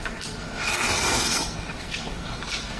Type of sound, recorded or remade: remade